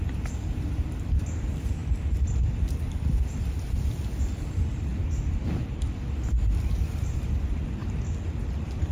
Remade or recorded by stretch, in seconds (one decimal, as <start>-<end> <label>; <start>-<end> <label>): 0.0-4.9 remade; 4.9-5.7 recorded; 5.7-8.9 remade